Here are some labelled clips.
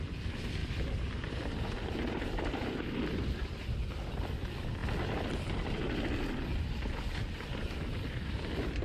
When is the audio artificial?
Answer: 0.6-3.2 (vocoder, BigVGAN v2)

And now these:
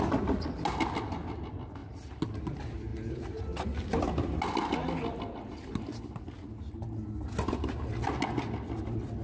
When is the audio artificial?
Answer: none